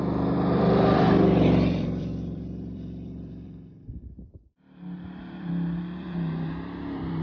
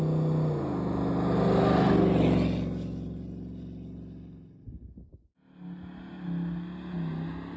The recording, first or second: second